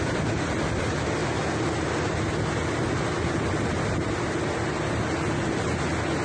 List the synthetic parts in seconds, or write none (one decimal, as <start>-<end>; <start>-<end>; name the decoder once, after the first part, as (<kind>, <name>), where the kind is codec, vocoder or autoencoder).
none